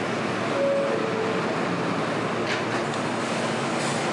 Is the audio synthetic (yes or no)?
no